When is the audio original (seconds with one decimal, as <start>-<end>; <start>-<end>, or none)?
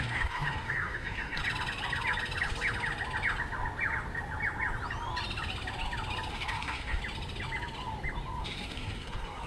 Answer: 1.4-6.3; 7.0-8.4